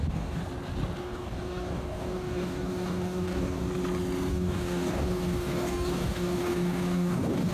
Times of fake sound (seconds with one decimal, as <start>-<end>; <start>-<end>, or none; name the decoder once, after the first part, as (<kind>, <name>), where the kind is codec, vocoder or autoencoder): 0.0-0.4 (codec, DAC); 1.0-3.6; 4.3-7.5